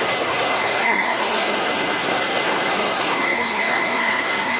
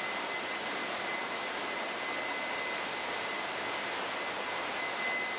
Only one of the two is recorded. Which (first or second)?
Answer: second